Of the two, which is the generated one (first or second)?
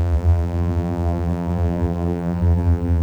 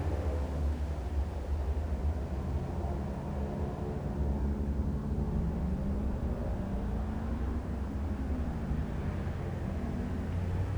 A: first